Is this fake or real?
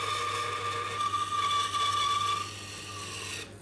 real